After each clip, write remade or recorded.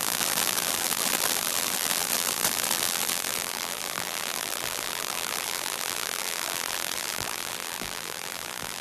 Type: remade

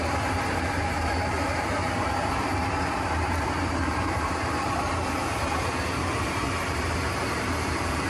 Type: remade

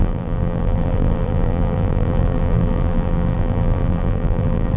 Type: remade